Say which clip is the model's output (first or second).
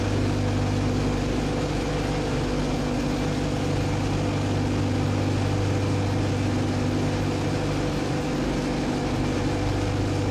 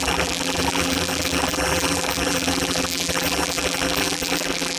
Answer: second